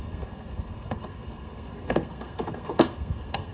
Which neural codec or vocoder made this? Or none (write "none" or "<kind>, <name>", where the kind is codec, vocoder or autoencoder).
codec, SNAC